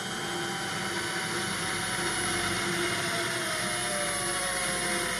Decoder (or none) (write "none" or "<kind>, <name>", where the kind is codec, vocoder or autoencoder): none